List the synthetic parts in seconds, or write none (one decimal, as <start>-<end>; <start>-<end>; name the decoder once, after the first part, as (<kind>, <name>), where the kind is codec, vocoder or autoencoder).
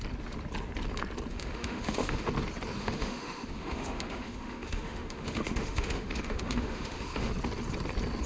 1.3-2.3 (autoencoder, DAC-VAE); 2.8-7.3